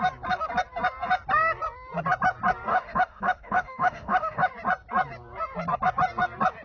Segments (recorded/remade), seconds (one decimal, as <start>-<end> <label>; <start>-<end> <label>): 0.0-2.7 recorded; 2.7-4.5 remade; 4.5-6.6 recorded